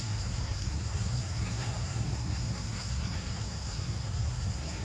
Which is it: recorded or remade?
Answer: remade